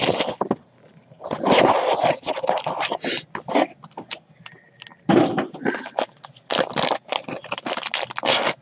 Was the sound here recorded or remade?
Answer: recorded